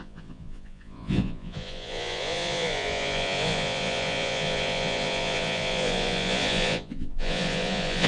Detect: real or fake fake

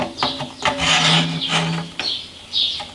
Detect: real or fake real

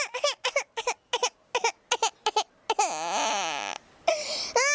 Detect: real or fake real